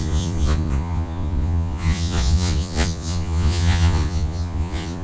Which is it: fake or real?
fake